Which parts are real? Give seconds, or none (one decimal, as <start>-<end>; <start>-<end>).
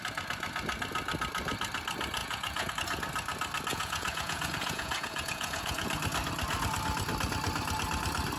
0.0-2.2; 2.7-3.7; 5.9-8.4